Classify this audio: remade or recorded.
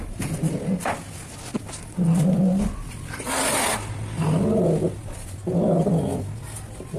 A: recorded